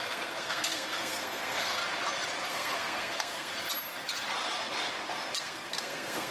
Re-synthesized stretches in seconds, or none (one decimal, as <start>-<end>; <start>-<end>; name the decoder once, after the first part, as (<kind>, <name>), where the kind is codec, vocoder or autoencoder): 0.0-1.8 (codec, SNAC); 2.5-3.5; 5.4-6.3